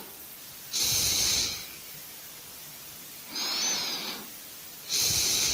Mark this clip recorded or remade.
recorded